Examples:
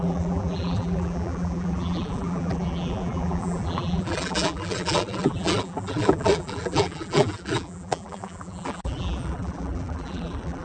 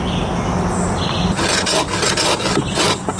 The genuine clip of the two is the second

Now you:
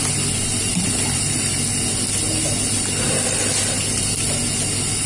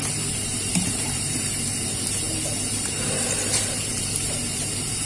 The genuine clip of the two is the first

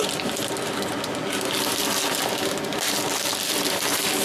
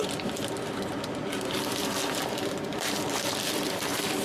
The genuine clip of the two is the first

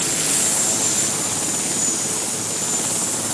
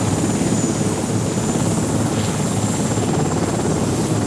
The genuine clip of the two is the first